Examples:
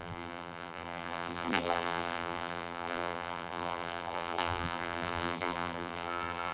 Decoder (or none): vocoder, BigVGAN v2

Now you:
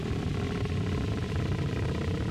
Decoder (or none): vocoder, BigVGAN v2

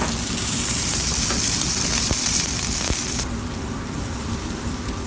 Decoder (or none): vocoder, BigVGAN v2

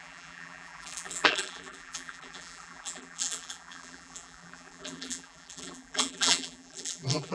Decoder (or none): vocoder, BigVGAN v2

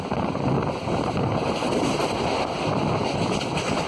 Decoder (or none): none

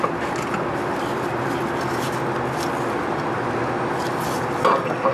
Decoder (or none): none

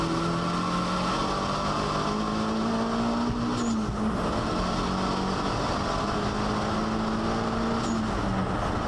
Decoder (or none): none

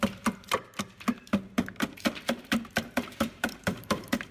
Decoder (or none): vocoder, BigVGAN v2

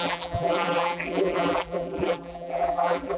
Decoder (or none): vocoder, BigVGAN v2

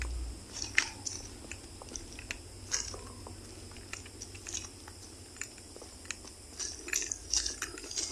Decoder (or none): none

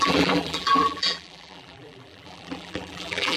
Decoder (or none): vocoder, BigVGAN v2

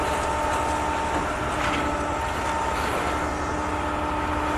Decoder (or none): none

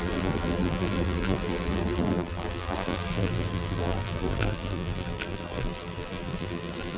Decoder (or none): vocoder, BigVGAN v2